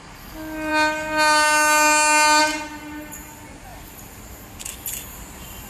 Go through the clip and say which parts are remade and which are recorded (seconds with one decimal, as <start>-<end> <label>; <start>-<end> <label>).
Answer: 0.0-5.7 recorded

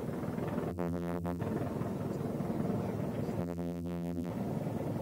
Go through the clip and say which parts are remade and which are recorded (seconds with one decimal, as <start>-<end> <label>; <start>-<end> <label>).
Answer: 0.0-0.7 recorded; 0.7-1.4 remade; 1.4-3.4 recorded; 3.4-4.3 remade; 4.3-5.0 recorded

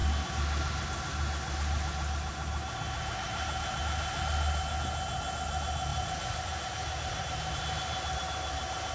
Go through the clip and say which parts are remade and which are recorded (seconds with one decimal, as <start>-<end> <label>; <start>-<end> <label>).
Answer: 0.0-5.9 recorded; 5.9-7.6 remade; 7.6-8.9 recorded

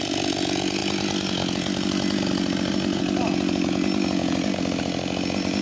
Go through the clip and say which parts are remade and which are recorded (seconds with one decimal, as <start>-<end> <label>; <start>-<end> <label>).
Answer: 0.0-5.6 recorded

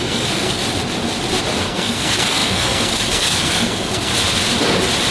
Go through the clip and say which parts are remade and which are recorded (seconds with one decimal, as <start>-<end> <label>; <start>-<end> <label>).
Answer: 0.0-0.6 remade; 0.6-1.6 recorded; 1.6-4.1 remade; 4.1-5.1 recorded